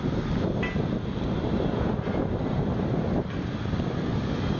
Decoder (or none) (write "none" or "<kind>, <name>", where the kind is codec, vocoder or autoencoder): none